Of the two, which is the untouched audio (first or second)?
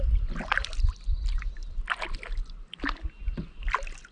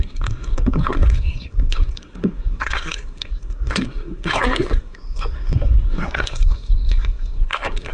first